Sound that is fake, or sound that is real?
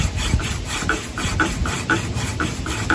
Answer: fake